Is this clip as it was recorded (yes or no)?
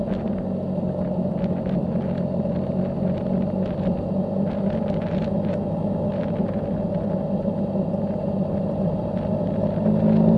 yes